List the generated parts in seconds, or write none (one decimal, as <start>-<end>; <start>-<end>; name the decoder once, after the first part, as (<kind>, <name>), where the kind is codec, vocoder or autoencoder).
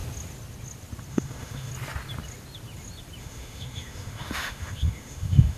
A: 1.1-1.7 (autoencoder, DAC-VAE); 3.2-5.6